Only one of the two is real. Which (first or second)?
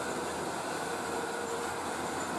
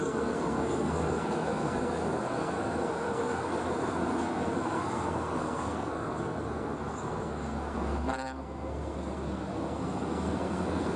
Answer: first